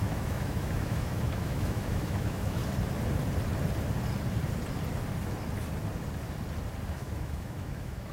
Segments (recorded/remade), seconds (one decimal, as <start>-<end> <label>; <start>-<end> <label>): 0.0-2.6 remade; 2.6-6.9 recorded; 6.9-8.1 remade